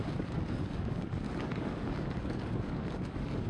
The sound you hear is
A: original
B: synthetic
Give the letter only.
B